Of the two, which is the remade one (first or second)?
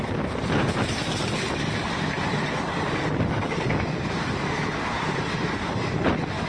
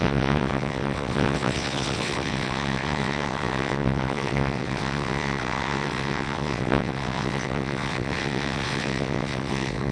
second